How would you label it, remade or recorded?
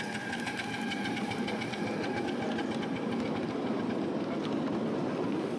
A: recorded